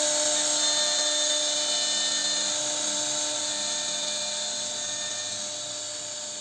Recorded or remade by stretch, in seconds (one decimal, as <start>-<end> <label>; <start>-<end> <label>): 0.0-6.4 recorded